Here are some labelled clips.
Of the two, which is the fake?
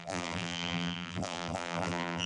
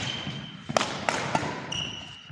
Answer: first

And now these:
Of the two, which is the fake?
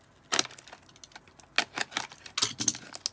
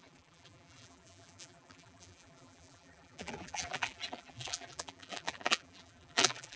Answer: second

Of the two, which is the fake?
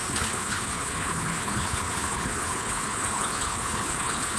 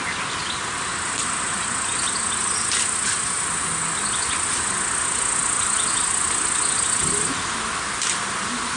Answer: first